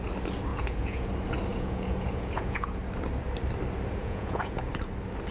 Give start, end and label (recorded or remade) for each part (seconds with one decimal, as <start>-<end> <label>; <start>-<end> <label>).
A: 0.0-0.5 recorded; 0.5-1.1 remade; 1.1-1.5 recorded; 1.5-2.8 remade; 2.8-4.0 recorded; 4.0-4.7 remade; 4.7-5.3 recorded